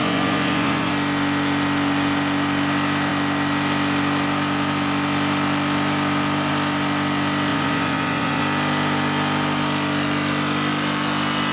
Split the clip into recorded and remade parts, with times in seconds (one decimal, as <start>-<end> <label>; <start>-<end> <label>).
0.0-0.9 remade; 0.9-7.5 recorded; 7.5-8.4 remade; 8.4-11.5 recorded